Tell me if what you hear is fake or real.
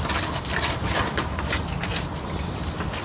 real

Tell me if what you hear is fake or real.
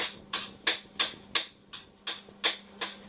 real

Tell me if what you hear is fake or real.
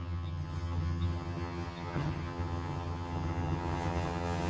fake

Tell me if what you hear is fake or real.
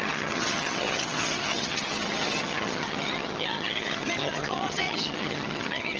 fake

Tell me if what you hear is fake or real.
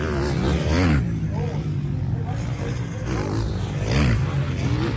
real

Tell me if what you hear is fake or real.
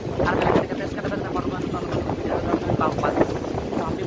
real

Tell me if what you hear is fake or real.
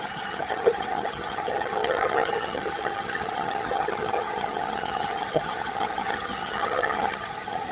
fake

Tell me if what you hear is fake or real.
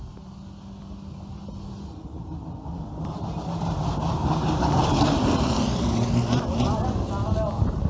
real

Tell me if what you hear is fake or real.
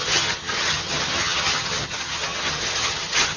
fake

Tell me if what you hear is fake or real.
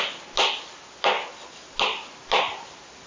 real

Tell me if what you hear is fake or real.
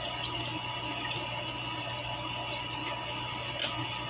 real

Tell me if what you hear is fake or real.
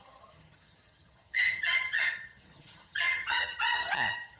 fake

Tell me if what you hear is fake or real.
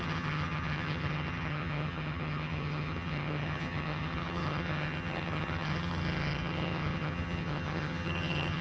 fake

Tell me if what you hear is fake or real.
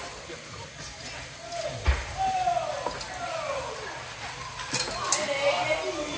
real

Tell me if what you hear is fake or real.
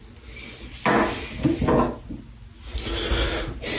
real